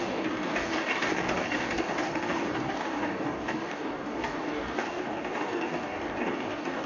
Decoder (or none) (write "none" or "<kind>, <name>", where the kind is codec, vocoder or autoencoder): codec, DAC